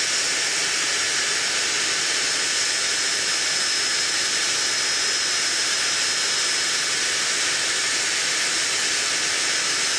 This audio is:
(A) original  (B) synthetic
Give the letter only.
A